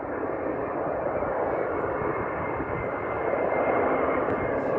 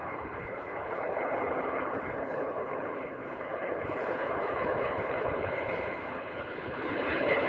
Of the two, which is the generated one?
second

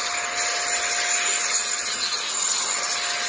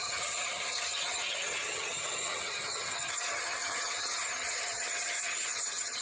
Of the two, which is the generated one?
second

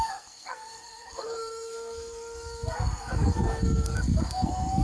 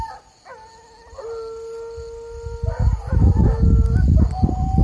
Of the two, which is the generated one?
first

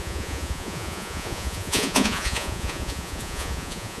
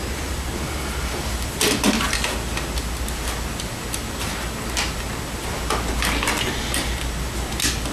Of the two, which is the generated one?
first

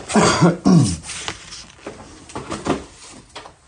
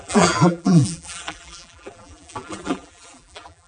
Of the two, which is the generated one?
second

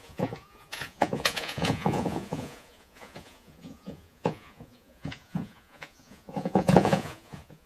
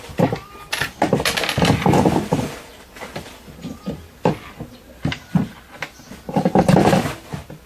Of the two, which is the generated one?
first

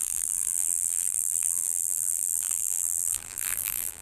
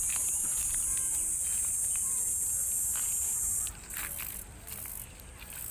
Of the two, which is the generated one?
first